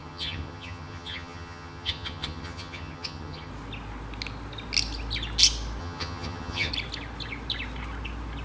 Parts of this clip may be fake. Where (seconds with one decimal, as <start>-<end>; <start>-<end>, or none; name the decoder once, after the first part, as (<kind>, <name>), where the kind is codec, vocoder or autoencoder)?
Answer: 0.0-3.5 (vocoder, HiFi-GAN); 5.8-6.7